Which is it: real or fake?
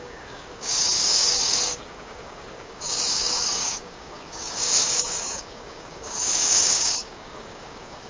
fake